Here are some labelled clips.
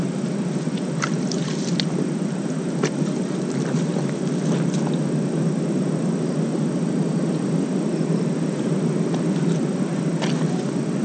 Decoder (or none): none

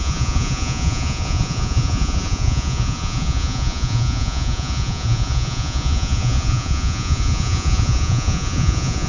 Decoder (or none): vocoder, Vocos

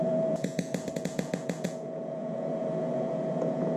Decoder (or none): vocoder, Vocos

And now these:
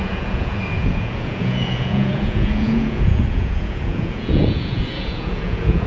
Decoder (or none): vocoder, Vocos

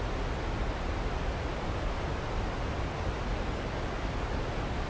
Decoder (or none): none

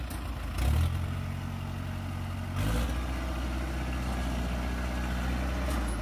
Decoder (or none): none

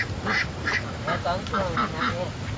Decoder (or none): none